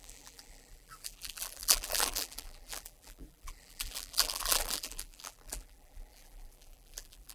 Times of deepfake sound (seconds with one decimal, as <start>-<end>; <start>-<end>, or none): 0.0-7.3